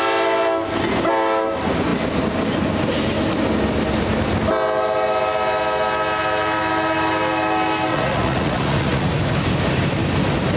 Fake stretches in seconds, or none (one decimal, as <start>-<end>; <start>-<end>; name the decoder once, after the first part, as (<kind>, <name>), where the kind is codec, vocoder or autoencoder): 7.9-9.1 (vocoder, Vocos)